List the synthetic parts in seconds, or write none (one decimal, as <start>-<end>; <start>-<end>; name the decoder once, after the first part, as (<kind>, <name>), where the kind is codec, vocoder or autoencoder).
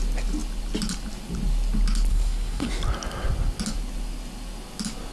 2.1-2.7 (codec, SNAC)